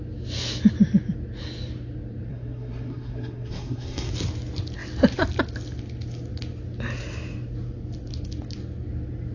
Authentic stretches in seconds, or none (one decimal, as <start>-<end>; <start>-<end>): 0.0-2.3; 4.1-9.3